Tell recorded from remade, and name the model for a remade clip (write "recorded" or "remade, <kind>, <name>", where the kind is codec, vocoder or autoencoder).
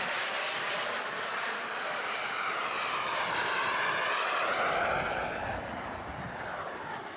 remade, vocoder, BigVGAN v2